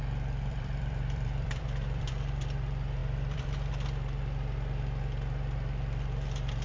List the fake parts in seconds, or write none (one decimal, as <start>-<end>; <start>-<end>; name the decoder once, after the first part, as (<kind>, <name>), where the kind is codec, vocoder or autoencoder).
0.5-2.1 (vocoder, BigVGAN v2); 3.0-3.7